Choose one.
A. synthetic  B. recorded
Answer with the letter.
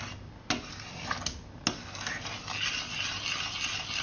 B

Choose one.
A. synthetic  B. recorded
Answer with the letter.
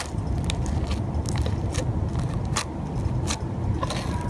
B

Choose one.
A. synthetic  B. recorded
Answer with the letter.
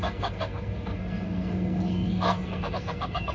A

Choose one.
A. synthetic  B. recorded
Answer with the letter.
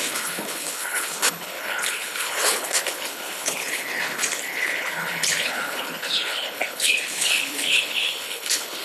A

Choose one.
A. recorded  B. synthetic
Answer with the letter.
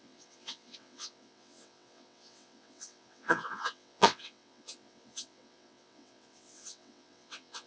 B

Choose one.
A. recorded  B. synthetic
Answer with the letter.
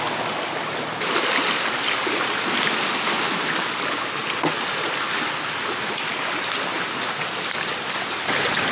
A